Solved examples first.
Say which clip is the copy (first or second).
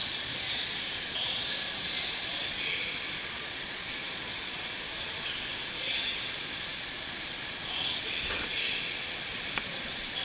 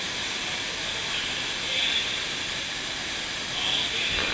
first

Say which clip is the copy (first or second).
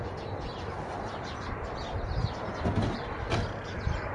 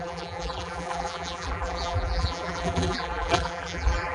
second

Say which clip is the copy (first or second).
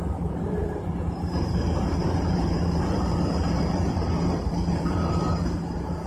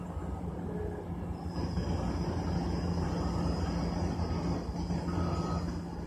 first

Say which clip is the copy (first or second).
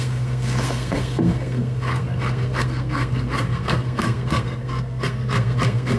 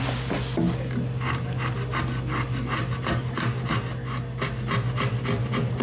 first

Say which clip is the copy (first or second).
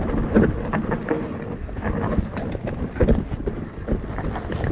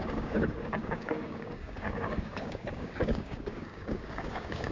second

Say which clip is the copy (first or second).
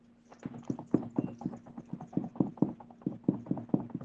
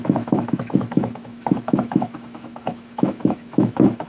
second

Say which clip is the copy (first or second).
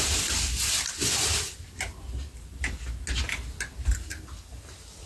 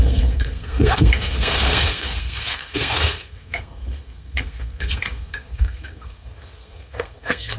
second